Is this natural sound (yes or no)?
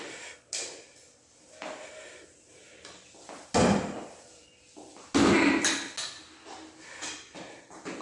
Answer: yes